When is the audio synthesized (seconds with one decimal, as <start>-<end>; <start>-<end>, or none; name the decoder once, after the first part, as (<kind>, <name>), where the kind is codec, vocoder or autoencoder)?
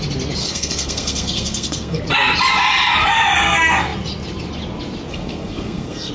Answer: 0.4-2.0 (codec, SNAC); 5.1-6.1